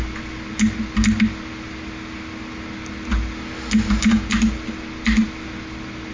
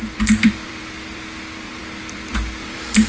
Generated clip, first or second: second